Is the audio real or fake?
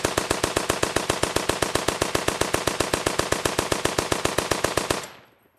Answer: real